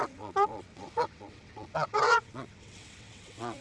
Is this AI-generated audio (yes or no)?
yes